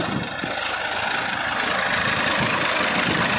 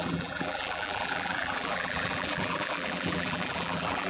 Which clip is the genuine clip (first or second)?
first